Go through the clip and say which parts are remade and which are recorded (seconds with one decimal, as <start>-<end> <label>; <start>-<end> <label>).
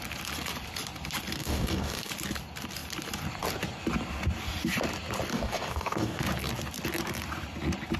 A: 0.0-1.4 recorded; 1.4-2.1 remade; 2.1-5.3 recorded; 5.3-6.2 remade; 6.2-8.0 recorded